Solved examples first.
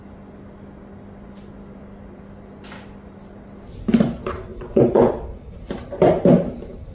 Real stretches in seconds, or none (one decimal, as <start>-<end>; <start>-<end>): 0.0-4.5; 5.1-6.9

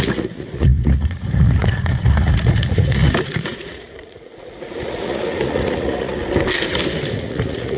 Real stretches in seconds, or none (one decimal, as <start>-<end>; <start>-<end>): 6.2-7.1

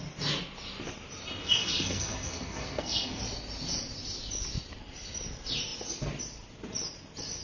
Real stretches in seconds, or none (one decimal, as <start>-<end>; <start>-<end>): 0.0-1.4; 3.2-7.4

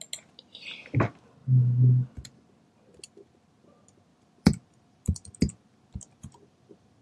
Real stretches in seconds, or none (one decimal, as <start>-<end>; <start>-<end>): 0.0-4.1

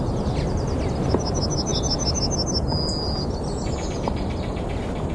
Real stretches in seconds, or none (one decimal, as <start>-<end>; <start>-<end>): 0.0-5.1

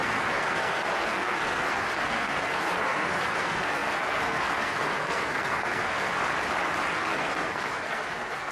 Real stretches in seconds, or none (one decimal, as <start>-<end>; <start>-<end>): 6.2-6.9

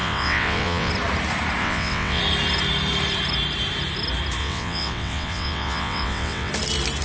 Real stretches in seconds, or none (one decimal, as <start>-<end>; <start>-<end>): 0.9-1.6; 2.2-4.4; 6.5-7.0

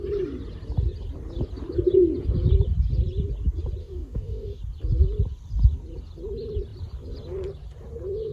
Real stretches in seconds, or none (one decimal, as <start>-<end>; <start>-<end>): 0.0-3.8; 4.6-8.3